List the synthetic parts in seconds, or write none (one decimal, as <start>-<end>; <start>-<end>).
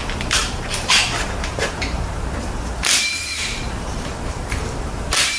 0.0-5.4